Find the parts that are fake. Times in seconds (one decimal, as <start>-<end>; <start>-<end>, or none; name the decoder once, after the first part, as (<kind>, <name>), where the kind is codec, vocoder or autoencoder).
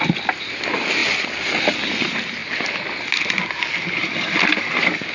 none